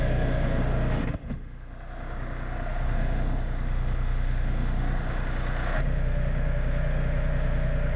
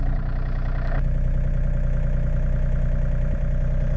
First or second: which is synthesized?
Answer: first